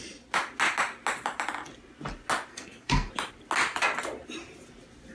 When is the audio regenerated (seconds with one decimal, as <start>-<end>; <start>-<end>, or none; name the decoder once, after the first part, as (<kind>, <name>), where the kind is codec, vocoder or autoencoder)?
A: 2.5-3.1 (codec, SNAC)